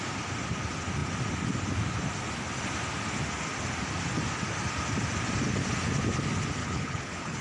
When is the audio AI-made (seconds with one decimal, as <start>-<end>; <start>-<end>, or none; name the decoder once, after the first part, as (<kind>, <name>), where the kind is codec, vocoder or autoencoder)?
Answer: 6.6-7.4 (codec, HILCodec)

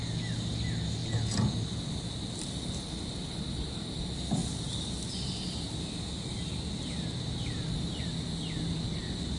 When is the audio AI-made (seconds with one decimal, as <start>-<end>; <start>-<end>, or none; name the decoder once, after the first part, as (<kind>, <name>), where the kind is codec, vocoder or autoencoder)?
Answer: none

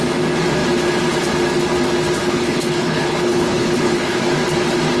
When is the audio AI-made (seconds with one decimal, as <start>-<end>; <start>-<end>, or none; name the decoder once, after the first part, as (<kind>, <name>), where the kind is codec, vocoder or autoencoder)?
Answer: 2.2-4.2 (codec, HILCodec)

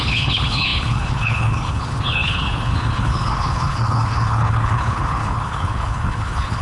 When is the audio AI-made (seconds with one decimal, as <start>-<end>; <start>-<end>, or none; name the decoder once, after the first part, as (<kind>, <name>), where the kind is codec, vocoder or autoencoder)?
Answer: 0.0-6.6 (codec, HILCodec)

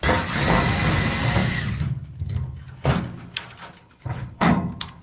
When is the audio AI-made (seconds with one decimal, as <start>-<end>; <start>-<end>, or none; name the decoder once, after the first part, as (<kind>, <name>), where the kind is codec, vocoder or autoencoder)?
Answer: 3.8-4.5 (codec, HILCodec)

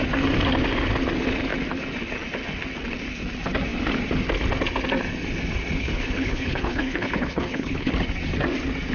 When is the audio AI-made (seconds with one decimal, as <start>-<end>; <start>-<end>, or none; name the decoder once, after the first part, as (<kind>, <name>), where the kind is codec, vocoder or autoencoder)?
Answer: 5.8-7.9 (codec, HILCodec)